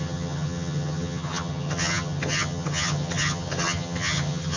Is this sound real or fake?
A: fake